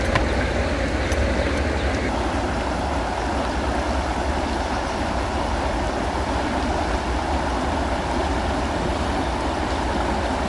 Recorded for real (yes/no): yes